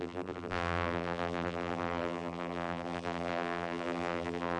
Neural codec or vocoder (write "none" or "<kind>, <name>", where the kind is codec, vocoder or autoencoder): vocoder, BigVGAN v2